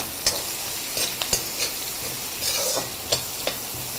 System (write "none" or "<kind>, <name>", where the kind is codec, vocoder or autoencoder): none